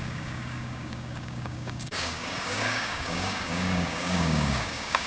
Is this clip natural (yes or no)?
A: no